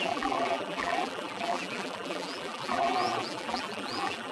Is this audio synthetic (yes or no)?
yes